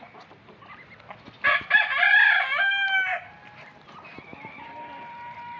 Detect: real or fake real